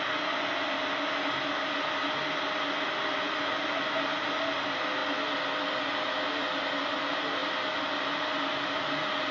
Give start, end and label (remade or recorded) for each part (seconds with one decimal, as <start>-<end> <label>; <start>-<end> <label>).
0.0-9.3 recorded